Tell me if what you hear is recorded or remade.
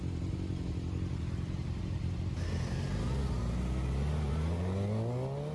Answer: recorded